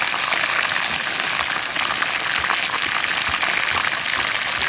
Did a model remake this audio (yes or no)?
no